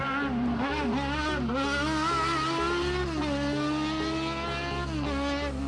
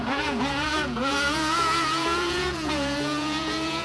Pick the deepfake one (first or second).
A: second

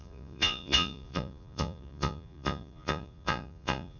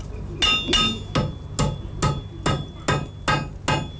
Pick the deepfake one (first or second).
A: first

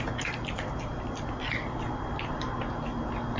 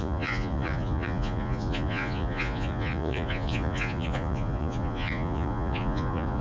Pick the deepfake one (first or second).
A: second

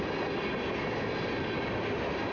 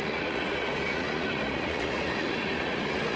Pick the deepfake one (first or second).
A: second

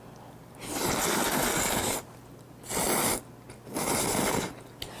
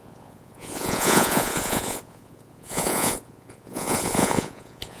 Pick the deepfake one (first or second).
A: second